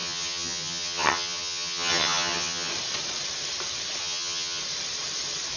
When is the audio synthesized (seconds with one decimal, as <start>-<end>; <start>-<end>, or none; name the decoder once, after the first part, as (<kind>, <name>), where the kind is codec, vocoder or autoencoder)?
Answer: 0.0-2.7 (vocoder, HiFi-GAN); 4.0-4.6

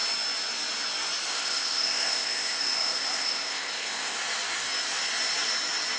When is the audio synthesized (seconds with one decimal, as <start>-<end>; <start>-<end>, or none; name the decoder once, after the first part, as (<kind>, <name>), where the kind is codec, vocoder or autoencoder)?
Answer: 1.3-4.2 (codec, ZipCodec)